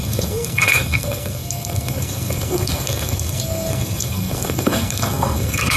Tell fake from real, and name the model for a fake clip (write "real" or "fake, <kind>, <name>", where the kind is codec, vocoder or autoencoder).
fake, codec, SNAC